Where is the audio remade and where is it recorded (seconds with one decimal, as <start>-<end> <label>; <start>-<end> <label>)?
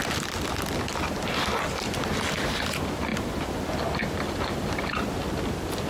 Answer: 0.0-5.9 recorded